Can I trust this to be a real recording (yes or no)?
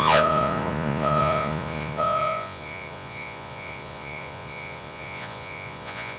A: no